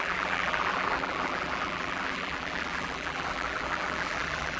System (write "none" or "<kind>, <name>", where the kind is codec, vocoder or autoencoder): vocoder, BigVGAN v2